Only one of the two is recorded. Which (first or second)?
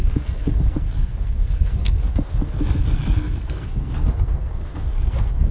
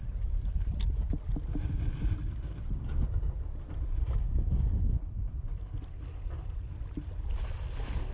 second